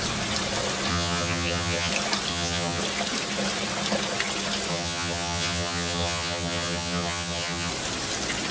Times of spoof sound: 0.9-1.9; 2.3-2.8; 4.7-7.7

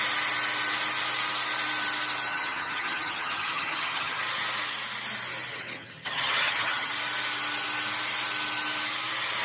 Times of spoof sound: 2.3-4.2; 5.5-6.9

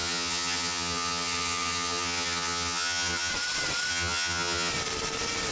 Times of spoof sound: 0.0-3.3; 3.9-4.7

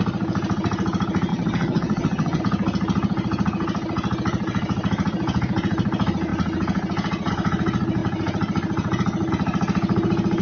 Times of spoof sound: 1.3-2.4

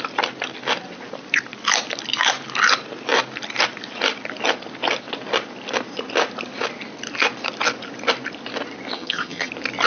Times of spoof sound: 8.9-9.5

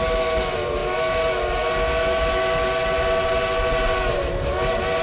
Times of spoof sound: none

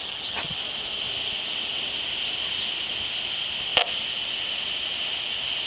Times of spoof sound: 0.0-0.6